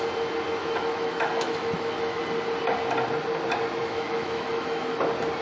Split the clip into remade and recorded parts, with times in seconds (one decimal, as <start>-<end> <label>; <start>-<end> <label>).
0.0-0.6 recorded; 0.6-2.2 remade; 2.2-3.8 recorded; 3.8-5.0 remade; 5.0-5.4 recorded